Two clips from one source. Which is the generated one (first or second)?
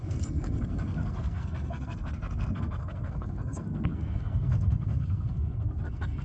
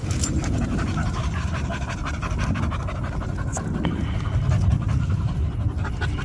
first